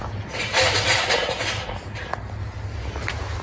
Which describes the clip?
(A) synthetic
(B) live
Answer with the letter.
B